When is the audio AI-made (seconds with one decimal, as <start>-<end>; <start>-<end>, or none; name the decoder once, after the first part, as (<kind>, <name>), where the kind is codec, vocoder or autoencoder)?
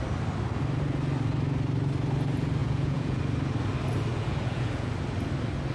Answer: 2.6-3.2 (vocoder, Vocos); 4.1-4.9